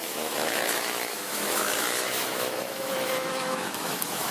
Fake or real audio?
fake